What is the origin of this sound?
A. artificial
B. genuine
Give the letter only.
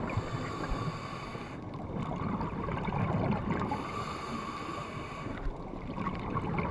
B